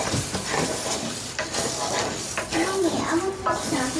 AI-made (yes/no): yes